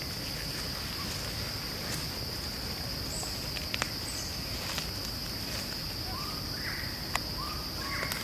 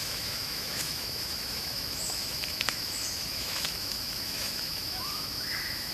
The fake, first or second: second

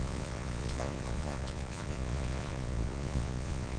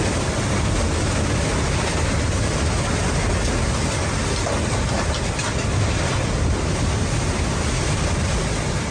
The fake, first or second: first